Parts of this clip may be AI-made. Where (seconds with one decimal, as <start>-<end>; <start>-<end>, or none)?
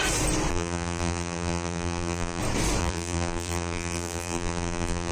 0.5-2.4; 2.8-5.1